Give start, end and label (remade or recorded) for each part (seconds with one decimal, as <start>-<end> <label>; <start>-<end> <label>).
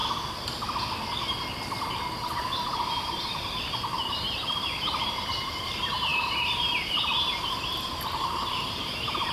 0.0-1.9 recorded; 1.9-9.3 remade